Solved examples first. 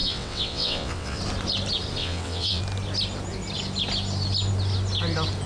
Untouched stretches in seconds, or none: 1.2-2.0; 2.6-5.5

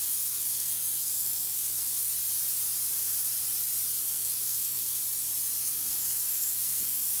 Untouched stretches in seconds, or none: 2.1-4.0; 5.0-5.6

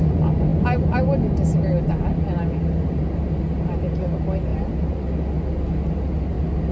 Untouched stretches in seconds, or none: 0.0-6.7

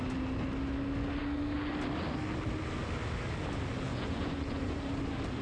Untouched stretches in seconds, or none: 0.0-3.9; 4.8-5.4

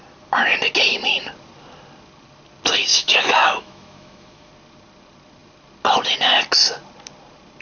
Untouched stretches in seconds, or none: 0.0-2.9; 4.5-7.6

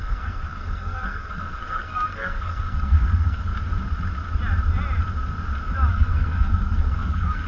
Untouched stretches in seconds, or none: 3.5-5.9

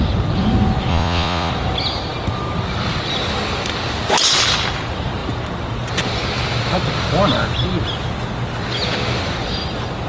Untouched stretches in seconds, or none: 0.0-0.9; 1.5-10.1

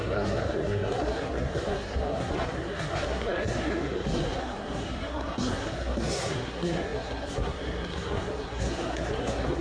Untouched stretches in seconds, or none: none